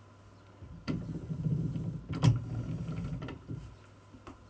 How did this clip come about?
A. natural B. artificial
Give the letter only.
A